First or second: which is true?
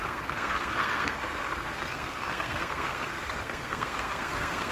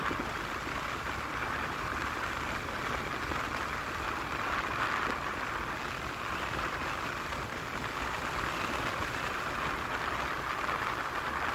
second